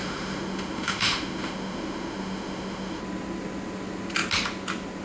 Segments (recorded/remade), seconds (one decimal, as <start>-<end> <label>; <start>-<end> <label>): 0.0-3.0 remade; 3.0-5.0 recorded